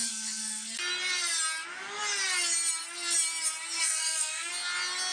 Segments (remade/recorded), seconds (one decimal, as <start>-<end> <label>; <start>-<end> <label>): 0.0-0.8 remade; 0.8-3.8 recorded; 3.8-4.5 remade; 4.5-5.1 recorded